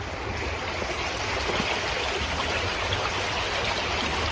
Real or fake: real